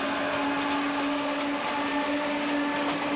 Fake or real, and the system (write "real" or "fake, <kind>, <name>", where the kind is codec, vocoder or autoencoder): real